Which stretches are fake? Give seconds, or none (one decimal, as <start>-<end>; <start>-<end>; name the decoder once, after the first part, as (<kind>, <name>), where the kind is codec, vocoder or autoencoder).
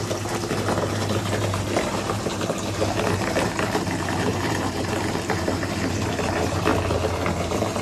0.0-6.7 (vocoder, BigVGAN v2); 7.3-7.8